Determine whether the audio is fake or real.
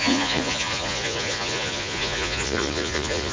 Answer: fake